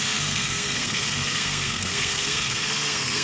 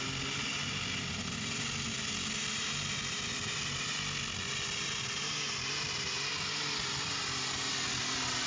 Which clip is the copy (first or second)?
first